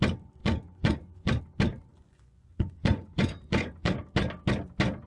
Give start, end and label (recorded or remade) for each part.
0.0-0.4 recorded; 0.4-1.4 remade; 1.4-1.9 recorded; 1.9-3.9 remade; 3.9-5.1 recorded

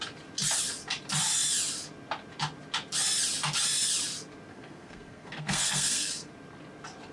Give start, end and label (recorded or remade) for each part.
0.0-4.5 recorded; 4.5-6.3 remade; 6.3-7.1 recorded

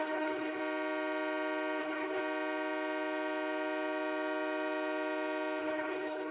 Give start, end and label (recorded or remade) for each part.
0.0-0.6 remade; 0.6-1.8 recorded; 1.8-2.2 remade; 2.2-5.6 recorded; 5.6-6.3 remade

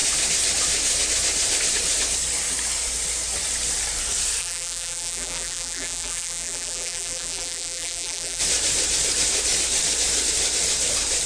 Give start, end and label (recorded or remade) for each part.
0.0-4.4 recorded; 4.4-8.4 remade; 8.4-11.3 recorded

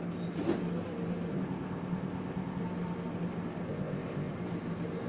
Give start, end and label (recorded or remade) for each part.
0.0-1.3 recorded; 1.3-2.6 remade; 2.6-3.7 recorded; 3.7-4.3 remade; 4.3-5.1 recorded